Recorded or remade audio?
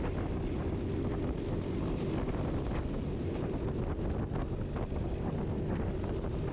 recorded